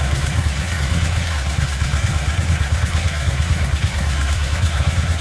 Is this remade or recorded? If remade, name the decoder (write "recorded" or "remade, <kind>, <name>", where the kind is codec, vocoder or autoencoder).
remade, codec, SNAC